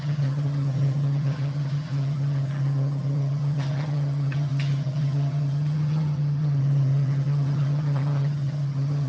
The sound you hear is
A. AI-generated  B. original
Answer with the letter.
A